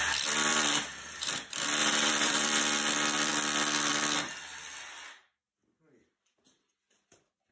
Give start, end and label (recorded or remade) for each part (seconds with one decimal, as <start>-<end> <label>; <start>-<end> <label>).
0.0-0.5 recorded; 0.5-1.3 remade; 1.3-1.8 recorded; 1.8-2.6 remade; 2.6-7.5 recorded